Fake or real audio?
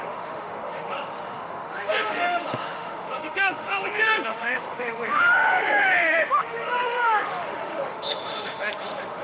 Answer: fake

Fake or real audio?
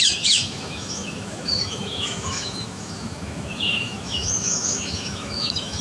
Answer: fake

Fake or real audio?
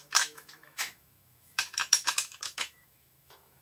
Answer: fake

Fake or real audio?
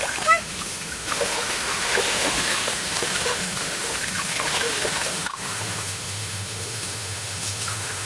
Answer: fake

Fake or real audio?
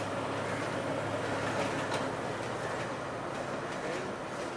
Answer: real